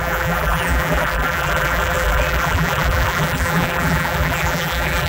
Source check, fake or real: fake